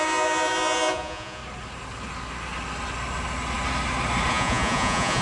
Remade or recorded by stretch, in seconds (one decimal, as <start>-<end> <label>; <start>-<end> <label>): 0.0-1.4 remade; 1.4-4.3 recorded; 4.3-5.2 remade